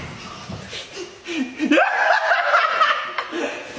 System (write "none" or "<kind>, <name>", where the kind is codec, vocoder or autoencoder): none